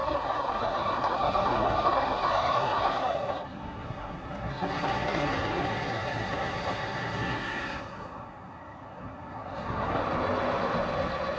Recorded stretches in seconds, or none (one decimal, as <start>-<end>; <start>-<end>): 10.0-11.4